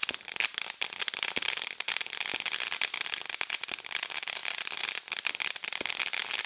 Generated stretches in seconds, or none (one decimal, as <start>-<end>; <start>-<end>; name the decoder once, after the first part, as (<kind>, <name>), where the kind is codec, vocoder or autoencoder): none